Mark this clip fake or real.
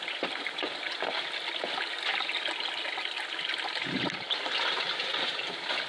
real